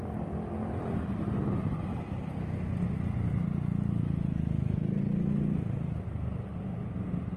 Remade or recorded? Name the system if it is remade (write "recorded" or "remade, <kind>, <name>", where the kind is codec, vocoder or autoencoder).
recorded